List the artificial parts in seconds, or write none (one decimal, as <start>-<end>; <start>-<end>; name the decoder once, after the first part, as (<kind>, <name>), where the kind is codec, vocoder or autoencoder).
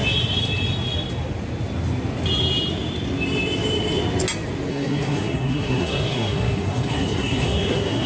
4.7-8.1 (codec, SNAC)